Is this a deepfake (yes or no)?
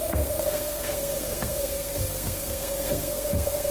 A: yes